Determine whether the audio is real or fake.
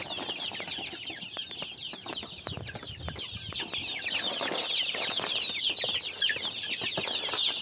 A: real